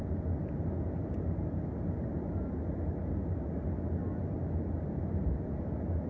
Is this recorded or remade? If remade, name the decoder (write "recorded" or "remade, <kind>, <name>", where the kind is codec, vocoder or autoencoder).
recorded